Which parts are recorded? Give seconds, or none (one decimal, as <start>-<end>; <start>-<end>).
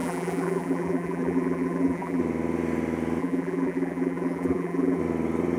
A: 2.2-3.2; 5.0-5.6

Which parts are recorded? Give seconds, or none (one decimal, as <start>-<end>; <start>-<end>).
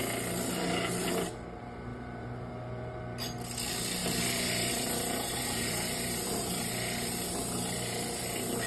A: 0.0-1.9; 2.5-4.0; 6.7-8.7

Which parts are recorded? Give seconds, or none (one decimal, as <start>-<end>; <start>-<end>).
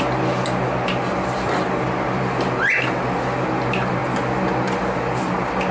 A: 0.0-5.7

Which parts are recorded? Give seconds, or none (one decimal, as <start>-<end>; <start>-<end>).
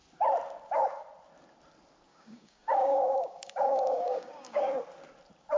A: 0.0-2.1; 4.7-5.6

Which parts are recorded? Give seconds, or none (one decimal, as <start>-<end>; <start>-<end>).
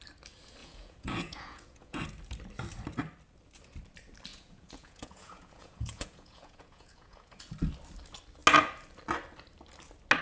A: 0.0-0.6; 2.0-4.3; 7.4-10.2